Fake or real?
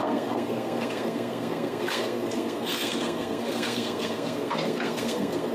fake